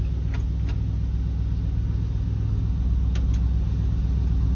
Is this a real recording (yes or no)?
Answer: yes